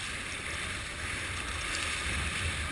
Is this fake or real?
real